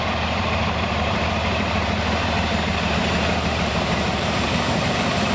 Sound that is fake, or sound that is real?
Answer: fake